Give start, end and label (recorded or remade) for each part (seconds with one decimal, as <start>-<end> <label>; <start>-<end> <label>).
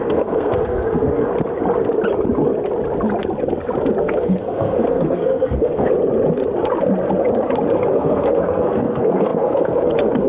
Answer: 0.0-1.3 remade; 1.3-4.0 recorded; 4.0-5.9 remade; 5.9-7.9 recorded; 7.9-10.3 remade